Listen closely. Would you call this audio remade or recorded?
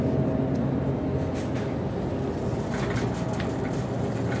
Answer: recorded